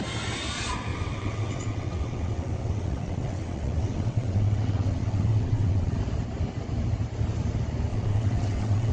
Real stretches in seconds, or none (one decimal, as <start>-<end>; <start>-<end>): 0.0-0.9; 6.0-7.9